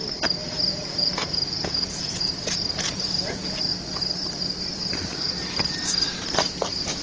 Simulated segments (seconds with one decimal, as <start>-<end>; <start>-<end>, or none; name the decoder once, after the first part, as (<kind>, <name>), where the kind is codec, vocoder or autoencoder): 0.7-3.7 (vocoder, Vocos)